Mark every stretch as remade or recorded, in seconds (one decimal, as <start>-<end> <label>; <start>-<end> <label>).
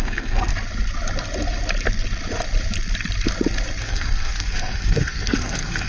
0.0-0.5 remade; 0.5-3.8 recorded; 3.8-5.9 remade